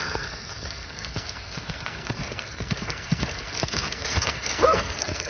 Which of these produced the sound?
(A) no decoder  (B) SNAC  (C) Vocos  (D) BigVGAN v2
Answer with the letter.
B